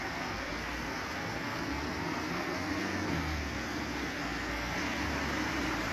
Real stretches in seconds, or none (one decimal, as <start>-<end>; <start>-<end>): 5.1-5.9